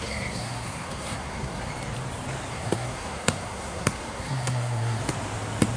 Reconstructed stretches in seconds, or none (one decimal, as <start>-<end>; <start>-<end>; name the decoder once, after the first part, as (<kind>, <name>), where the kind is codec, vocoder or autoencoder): 0.0-1.7 (codec, SNAC); 2.5-5.0